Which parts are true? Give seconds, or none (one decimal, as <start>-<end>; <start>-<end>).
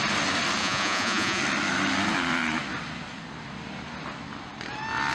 0.0-0.6; 1.4-5.1